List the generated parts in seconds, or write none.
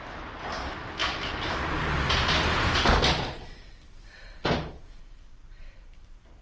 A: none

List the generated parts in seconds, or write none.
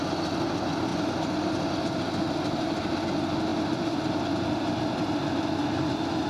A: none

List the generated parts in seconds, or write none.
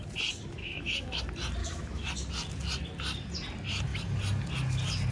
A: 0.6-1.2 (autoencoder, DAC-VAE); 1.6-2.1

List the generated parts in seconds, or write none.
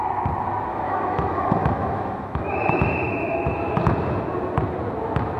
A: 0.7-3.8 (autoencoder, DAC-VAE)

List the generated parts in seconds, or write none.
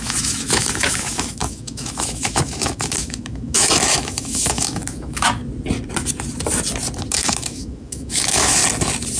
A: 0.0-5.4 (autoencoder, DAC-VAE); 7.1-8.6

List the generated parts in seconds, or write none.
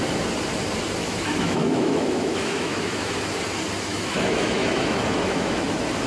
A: 1.0-3.1 (autoencoder, DAC-VAE); 3.9-5.6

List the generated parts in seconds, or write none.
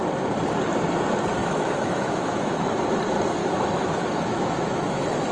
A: 1.4-2.8 (autoencoder, DAC-VAE); 3.4-5.3